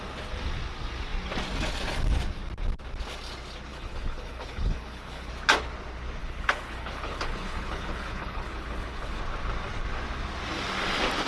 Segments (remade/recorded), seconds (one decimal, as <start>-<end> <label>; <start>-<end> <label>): 0.0-3.7 recorded; 3.7-5.3 remade; 5.3-6.2 recorded; 6.2-9.2 remade; 9.2-11.3 recorded